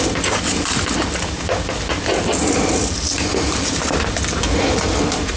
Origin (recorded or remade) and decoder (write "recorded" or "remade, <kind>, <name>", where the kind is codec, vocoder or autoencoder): recorded